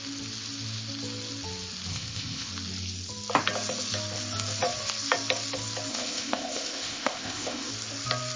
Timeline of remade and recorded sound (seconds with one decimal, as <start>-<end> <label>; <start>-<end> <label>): 0.0-1.9 recorded; 1.9-2.5 remade; 2.5-5.9 recorded; 5.9-7.7 remade; 7.7-8.4 recorded